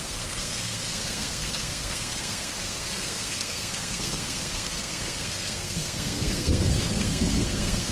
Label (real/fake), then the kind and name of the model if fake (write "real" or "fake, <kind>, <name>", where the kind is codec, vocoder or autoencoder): fake, codec, SNAC